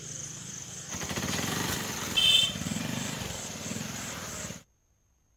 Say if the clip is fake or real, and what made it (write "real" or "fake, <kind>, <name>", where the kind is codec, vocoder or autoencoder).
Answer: fake, vocoder, BigVGAN v2